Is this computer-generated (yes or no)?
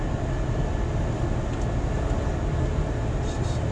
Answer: no